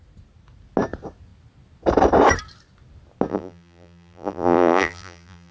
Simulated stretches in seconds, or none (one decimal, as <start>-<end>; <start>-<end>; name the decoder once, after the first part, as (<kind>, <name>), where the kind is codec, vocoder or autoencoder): 3.3-5.5 (vocoder, BigVGAN v2)